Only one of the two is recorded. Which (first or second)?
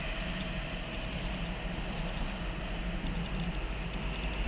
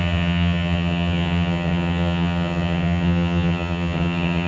first